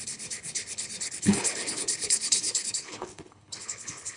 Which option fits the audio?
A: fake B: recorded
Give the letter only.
A